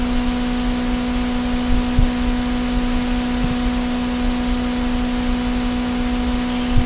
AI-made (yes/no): no